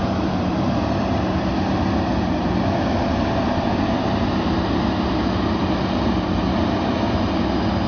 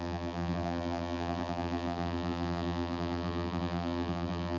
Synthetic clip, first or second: second